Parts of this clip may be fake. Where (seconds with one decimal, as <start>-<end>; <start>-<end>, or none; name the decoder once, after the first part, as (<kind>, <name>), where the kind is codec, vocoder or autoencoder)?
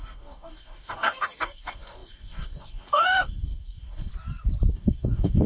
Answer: 0.0-4.1 (codec, DAC); 4.7-5.5